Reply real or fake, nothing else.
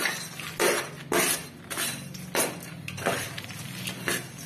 real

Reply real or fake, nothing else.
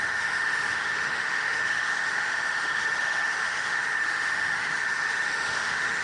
fake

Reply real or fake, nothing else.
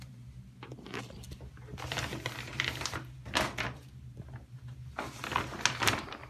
real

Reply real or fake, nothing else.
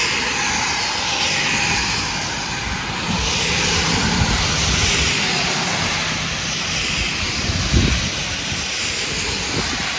real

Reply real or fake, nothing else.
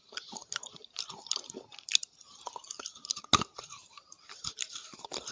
real